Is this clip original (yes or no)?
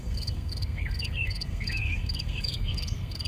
no